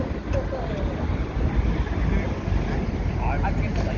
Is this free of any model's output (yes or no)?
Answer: yes